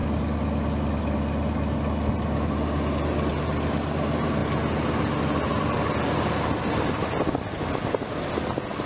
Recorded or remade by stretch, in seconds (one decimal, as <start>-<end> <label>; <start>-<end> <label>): 0.0-8.9 recorded